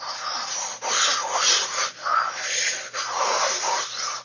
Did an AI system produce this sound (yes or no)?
yes